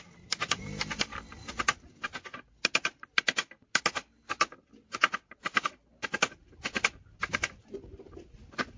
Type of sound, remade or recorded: recorded